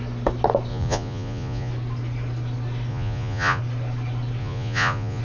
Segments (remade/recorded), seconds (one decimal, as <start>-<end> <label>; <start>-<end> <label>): 0.0-0.7 recorded; 0.7-1.7 remade; 1.7-2.9 recorded; 2.9-3.6 remade; 3.6-4.4 recorded; 4.4-5.2 remade